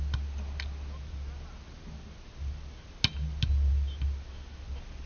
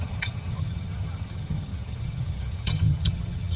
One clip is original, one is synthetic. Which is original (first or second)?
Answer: first